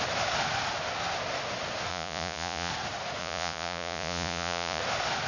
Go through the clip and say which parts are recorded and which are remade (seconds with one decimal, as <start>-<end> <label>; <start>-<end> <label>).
0.0-1.9 recorded; 1.9-2.7 remade; 2.7-3.2 recorded; 3.2-4.8 remade; 4.8-5.3 recorded